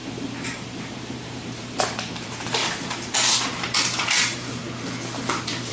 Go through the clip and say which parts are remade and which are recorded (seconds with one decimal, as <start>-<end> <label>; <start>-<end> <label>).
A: 0.0-2.6 remade; 2.6-3.3 recorded; 3.3-4.6 remade; 4.6-5.7 recorded